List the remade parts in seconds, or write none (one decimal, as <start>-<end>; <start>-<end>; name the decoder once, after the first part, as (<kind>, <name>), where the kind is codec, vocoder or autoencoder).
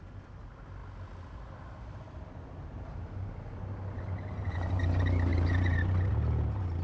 none